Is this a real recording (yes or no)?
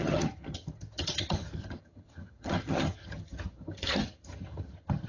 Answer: no